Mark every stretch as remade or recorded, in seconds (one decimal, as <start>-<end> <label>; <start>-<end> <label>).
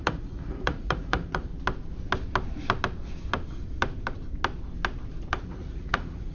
0.0-1.5 remade; 1.5-5.3 recorded; 5.3-6.3 remade